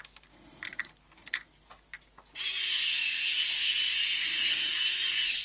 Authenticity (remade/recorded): recorded